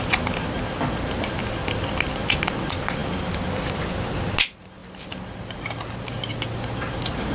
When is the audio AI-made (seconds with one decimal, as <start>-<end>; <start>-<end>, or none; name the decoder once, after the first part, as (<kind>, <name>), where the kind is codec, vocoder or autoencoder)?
none